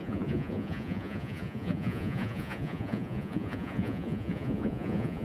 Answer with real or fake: fake